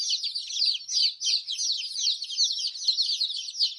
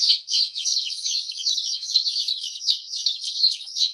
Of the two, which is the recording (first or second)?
first